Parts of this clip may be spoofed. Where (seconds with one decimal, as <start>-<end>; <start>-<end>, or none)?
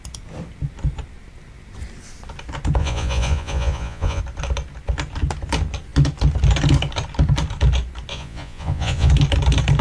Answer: 2.8-4.2; 8.1-9.1